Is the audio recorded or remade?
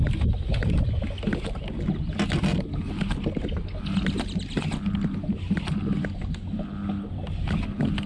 recorded